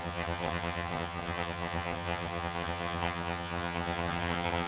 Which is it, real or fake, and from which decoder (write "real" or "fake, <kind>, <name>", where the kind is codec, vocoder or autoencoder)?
fake, vocoder, HiFi-GAN